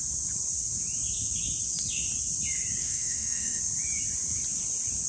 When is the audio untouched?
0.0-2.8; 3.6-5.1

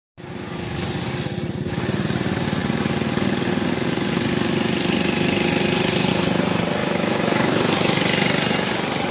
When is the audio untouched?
0.0-6.8; 7.6-9.1